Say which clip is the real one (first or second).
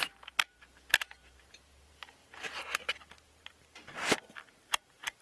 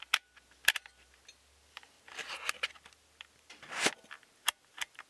second